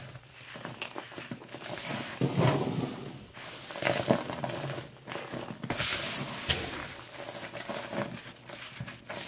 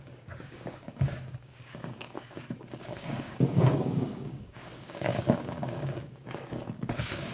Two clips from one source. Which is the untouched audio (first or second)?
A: first